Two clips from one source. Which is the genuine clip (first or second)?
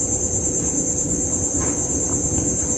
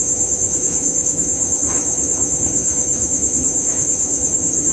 first